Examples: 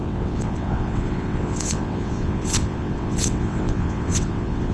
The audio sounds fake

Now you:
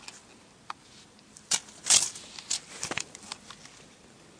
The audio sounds real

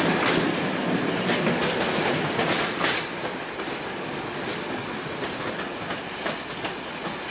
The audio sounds real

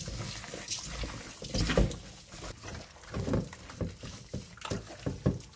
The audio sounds real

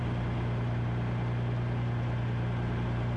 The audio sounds real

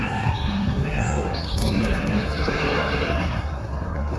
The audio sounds fake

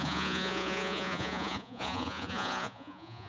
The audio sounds fake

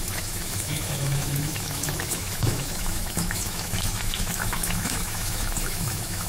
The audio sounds fake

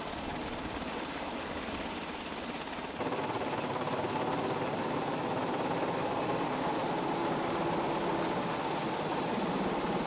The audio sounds real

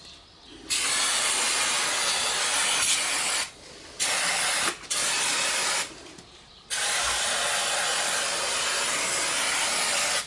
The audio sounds real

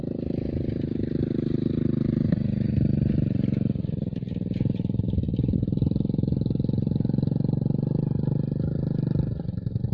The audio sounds real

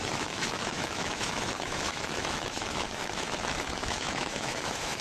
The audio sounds fake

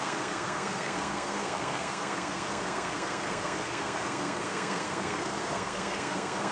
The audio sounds fake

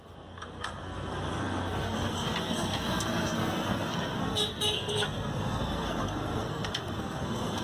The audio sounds fake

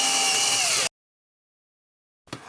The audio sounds real